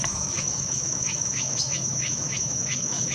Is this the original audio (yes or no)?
no